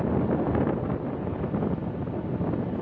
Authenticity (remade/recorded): recorded